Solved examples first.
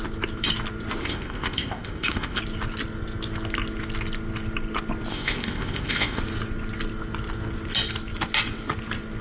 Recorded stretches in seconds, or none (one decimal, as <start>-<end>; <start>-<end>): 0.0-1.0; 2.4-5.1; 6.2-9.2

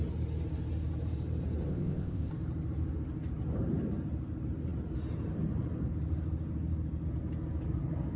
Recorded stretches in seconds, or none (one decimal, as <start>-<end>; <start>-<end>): 0.0-1.7; 2.3-8.2

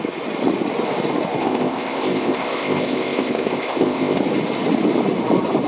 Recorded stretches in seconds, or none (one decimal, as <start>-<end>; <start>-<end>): 0.0-1.4; 4.2-5.7